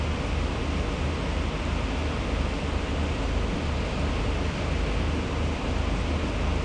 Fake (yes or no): no